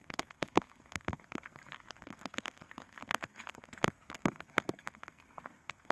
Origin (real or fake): fake